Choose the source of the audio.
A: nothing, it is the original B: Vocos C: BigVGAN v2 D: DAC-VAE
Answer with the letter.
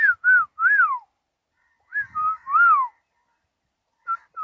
A